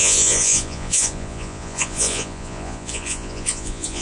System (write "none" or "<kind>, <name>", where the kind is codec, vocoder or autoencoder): vocoder, Vocos